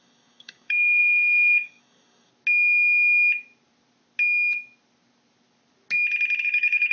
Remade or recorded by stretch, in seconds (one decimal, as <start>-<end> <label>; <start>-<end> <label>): 0.0-2.3 remade; 2.3-6.4 recorded; 6.4-6.9 remade